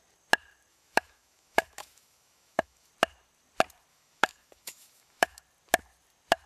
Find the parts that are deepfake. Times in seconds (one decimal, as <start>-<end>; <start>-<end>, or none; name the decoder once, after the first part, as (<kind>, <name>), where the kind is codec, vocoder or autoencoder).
0.7-2.9 (autoencoder, DAC-VAE); 3.9-5.4